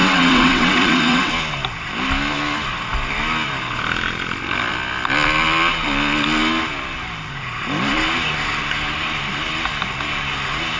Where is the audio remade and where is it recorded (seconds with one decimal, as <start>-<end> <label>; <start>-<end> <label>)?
0.0-1.3 remade; 1.3-10.8 recorded